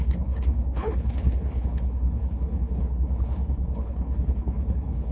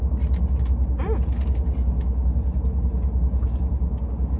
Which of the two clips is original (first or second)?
second